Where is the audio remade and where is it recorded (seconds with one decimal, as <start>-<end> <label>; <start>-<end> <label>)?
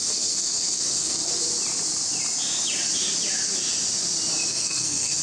0.0-1.4 remade; 1.4-4.5 recorded; 4.5-5.2 remade